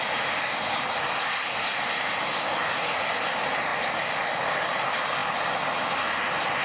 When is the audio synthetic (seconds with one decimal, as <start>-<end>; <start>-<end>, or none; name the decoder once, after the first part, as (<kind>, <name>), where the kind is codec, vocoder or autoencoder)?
none